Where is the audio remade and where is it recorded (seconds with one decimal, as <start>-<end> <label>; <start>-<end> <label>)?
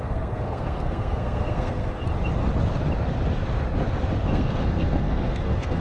0.0-2.0 remade; 2.0-4.3 recorded; 4.3-5.8 remade